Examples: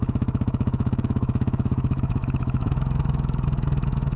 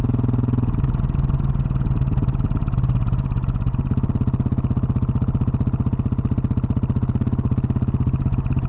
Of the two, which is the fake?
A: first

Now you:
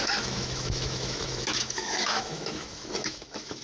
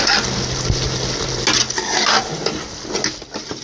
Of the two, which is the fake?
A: first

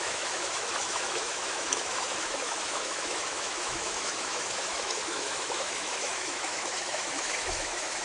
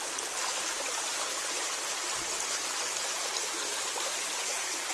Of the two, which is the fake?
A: first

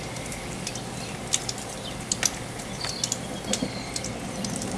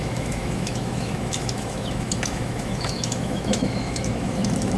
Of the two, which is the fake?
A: second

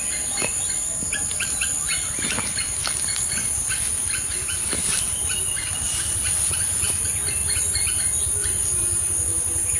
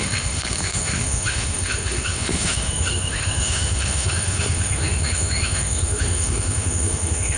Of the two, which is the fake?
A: second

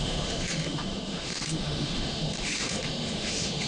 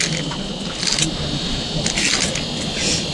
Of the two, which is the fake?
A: first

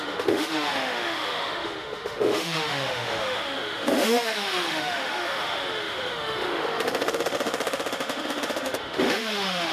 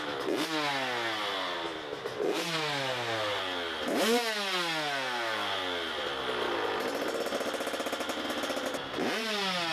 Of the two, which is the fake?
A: first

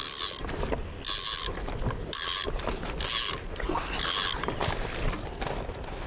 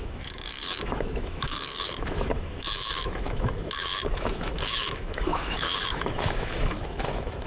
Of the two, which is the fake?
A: second